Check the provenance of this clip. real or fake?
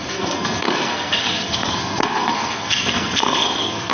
fake